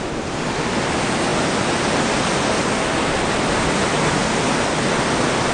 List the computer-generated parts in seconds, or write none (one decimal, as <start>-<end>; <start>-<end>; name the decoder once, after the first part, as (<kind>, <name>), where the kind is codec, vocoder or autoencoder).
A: none